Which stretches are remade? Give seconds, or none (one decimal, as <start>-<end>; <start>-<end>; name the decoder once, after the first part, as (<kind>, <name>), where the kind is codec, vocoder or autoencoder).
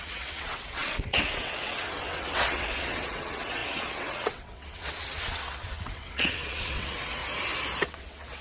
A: 0.0-7.2 (vocoder, WaveNeXt); 7.8-8.4